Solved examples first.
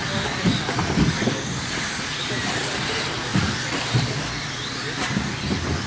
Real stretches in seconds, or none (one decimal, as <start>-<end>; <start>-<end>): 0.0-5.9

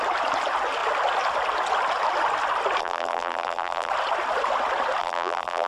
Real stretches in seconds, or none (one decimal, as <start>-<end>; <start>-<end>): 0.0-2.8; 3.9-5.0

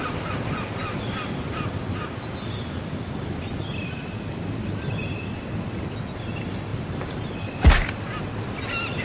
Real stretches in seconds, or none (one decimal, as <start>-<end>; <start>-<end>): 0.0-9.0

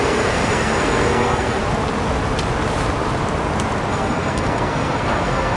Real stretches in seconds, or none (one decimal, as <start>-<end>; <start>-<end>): 1.6-3.9

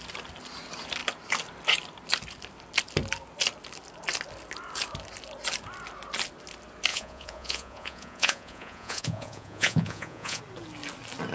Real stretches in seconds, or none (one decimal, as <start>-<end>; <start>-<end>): 0.0-6.9; 10.4-11.3